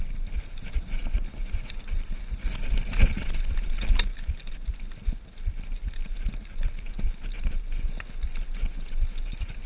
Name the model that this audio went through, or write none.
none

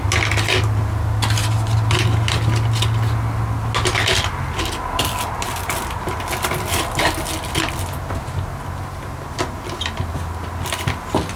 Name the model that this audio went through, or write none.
none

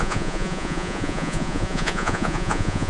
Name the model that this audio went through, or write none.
vocoder, Vocos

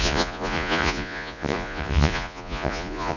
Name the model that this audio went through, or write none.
vocoder, Vocos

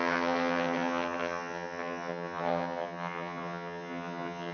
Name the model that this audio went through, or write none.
vocoder, HiFi-GAN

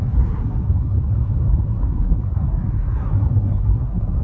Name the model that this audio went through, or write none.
codec, SNAC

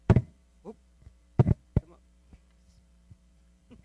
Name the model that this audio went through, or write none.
vocoder, BigVGAN v2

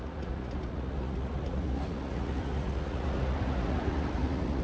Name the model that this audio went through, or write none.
vocoder, Vocos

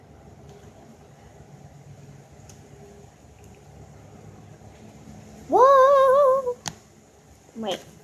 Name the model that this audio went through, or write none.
none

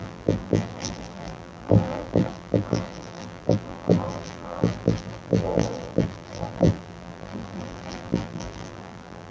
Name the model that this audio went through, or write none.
vocoder, BigVGAN v2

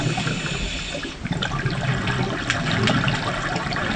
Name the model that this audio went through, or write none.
none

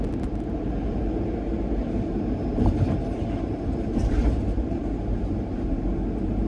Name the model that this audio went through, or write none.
vocoder, BigVGAN v2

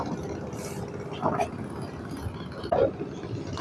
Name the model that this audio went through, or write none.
none